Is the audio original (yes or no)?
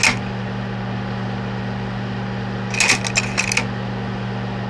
yes